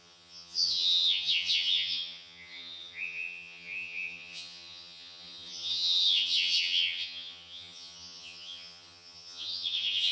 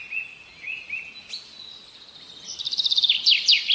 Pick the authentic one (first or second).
second